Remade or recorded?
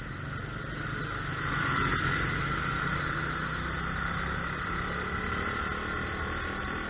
recorded